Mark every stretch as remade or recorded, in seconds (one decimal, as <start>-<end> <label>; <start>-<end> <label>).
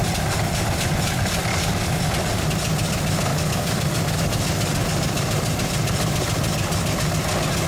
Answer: 0.0-1.5 recorded; 1.5-2.0 remade; 2.0-3.3 recorded; 3.3-4.2 remade; 4.2-7.7 recorded